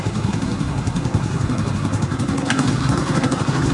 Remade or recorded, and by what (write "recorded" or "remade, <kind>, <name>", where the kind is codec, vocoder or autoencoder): remade, codec, SNAC